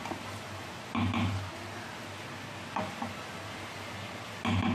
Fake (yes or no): no